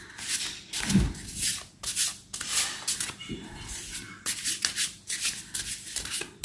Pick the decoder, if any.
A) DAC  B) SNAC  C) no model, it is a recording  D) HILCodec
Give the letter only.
C